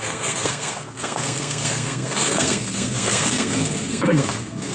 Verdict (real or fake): fake